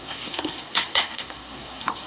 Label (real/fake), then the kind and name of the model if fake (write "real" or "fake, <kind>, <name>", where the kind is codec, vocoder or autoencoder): fake, codec, SNAC